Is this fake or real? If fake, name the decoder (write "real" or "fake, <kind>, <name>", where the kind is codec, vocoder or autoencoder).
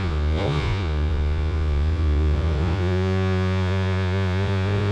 fake, vocoder, Vocos